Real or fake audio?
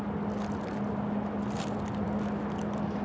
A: real